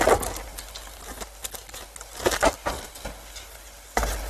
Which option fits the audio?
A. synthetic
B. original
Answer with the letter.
B